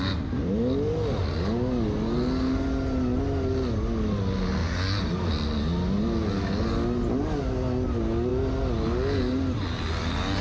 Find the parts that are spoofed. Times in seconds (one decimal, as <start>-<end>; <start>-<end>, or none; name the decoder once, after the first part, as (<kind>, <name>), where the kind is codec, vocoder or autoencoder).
none